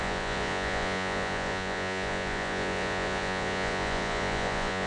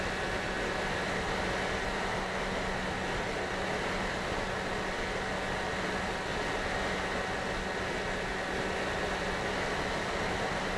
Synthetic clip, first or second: first